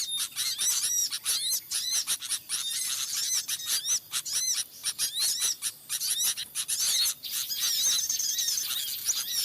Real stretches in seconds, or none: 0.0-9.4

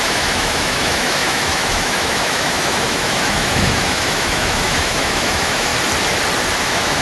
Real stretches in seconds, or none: 5.7-6.6

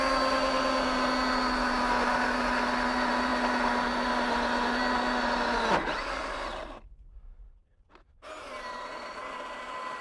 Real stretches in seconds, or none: 0.0-10.0

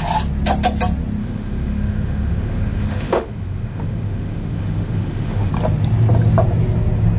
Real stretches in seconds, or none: 0.0-1.2; 5.5-7.2

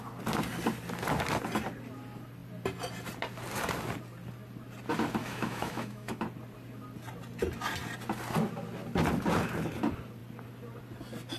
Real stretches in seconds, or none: 0.0-5.2; 6.2-11.4

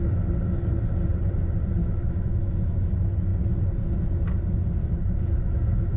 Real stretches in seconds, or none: 0.0-1.8; 2.9-4.8